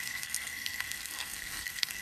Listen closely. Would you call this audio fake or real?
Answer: fake